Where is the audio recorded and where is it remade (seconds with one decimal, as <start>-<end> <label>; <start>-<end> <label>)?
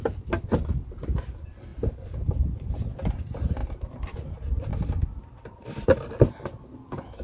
0.0-1.7 recorded; 1.7-2.7 remade; 2.7-3.6 recorded; 3.6-4.2 remade; 4.2-4.7 recorded; 4.7-6.3 remade; 6.3-7.2 recorded